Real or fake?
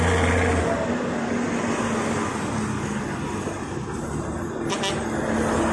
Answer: real